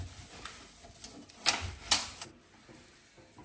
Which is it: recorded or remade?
recorded